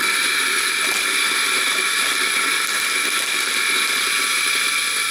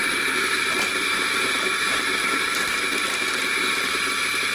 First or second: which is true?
first